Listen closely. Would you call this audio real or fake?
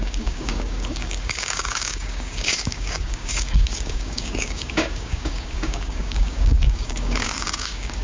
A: fake